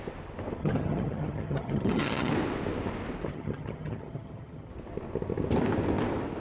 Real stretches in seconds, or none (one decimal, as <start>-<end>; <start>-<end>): 0.0-0.6; 2.3-3.3; 4.7-6.4